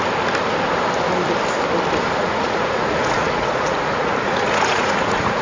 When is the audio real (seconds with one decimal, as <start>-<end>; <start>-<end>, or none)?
0.0-2.2